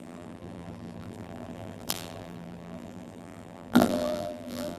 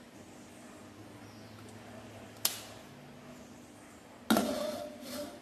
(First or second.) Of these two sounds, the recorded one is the second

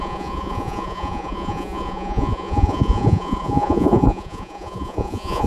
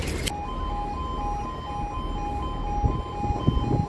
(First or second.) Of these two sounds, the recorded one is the second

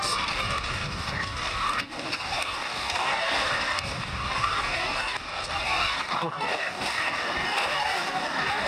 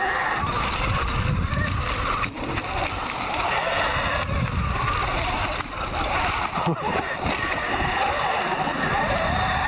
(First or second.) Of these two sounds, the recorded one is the second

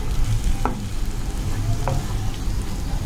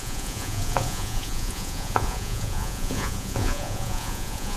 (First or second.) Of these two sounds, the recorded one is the first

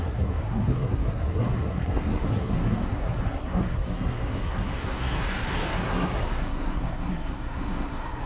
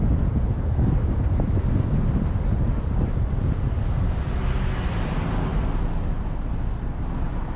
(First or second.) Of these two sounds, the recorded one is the second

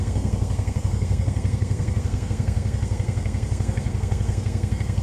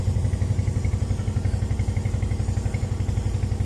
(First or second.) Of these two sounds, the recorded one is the second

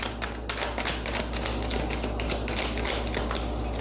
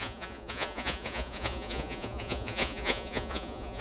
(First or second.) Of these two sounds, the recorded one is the first